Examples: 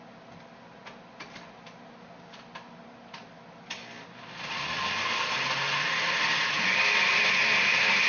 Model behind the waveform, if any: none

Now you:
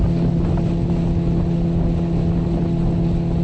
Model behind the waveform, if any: none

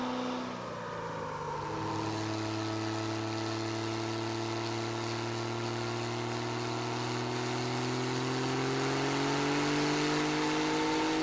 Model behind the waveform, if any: none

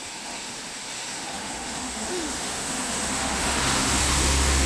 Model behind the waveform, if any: autoencoder, DAC-VAE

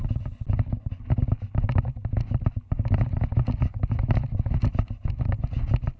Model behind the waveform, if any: none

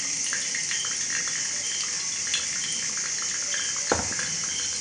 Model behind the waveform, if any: none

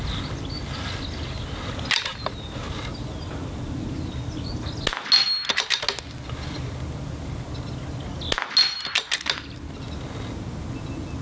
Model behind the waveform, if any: none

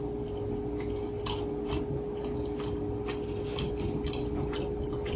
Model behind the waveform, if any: none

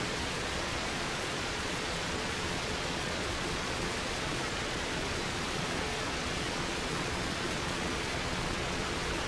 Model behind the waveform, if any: vocoder, Vocos